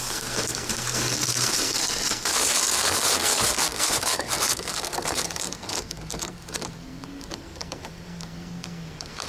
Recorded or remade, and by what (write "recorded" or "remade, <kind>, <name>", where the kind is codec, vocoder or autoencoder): remade, codec, SNAC